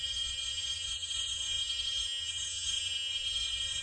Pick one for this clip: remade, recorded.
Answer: remade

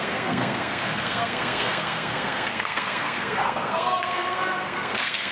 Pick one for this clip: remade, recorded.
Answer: remade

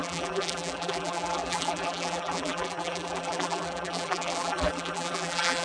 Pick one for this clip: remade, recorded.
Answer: remade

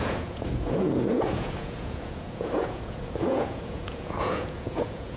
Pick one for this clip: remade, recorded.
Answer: remade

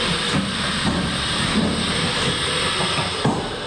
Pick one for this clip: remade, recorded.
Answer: recorded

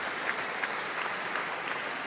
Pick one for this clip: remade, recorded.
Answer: remade